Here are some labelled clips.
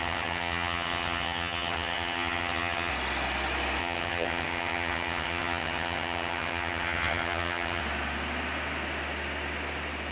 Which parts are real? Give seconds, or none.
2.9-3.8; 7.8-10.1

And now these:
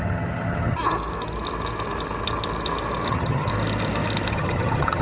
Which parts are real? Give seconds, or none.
0.8-3.1; 3.5-4.3

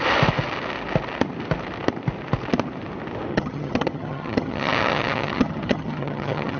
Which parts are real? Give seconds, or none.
0.0-3.3

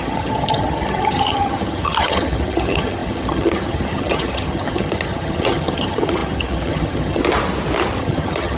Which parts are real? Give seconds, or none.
7.2-8.0

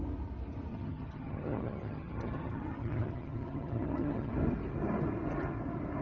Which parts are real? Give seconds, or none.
0.0-0.7; 4.3-6.0

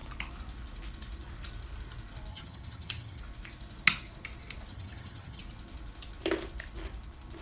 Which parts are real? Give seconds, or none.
0.0-2.3; 3.2-4.7; 5.4-7.4

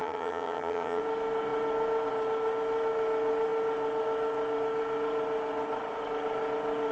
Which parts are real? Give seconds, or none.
1.0-6.9

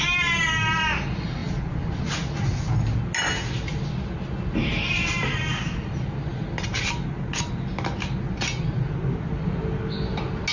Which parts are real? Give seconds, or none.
0.0-10.5